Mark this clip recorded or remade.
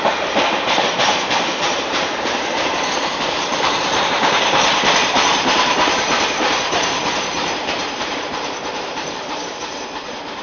remade